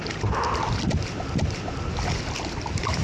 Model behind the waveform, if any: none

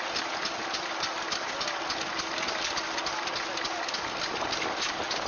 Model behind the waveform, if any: none